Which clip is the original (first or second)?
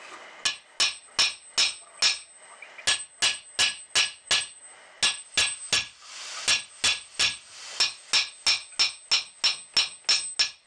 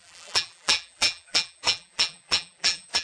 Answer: first